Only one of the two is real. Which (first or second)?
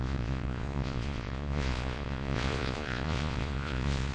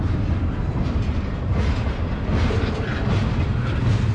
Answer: second